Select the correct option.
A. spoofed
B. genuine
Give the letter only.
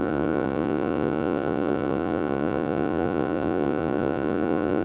A